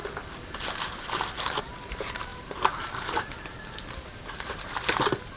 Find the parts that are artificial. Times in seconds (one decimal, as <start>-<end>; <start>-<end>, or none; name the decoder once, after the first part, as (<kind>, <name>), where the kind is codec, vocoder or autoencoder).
1.6-5.4 (vocoder, BigVGAN v2)